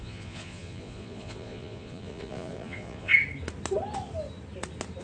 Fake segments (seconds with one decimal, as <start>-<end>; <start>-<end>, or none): 0.0-3.1